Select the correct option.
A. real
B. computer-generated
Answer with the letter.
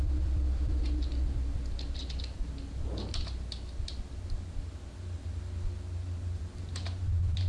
B